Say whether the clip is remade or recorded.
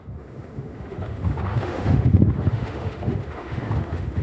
remade